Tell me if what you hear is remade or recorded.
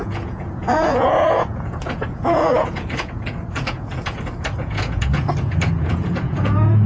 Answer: remade